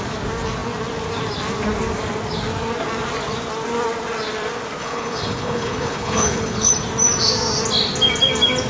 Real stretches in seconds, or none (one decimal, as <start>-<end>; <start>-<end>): 0.0-4.8; 6.7-8.7